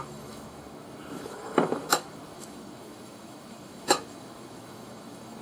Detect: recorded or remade remade